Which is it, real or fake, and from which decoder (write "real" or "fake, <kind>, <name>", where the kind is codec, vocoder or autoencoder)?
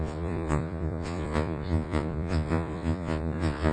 fake, vocoder, Vocos